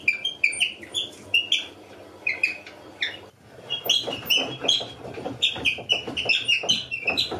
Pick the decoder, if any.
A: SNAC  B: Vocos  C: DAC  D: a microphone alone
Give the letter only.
D